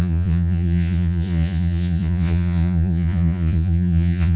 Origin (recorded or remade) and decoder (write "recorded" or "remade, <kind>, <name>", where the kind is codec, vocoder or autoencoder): remade, vocoder, Vocos